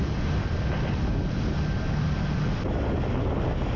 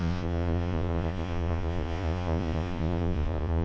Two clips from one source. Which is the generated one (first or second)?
second